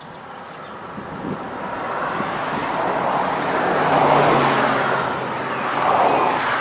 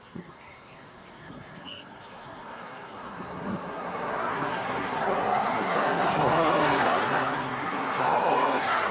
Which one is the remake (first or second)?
second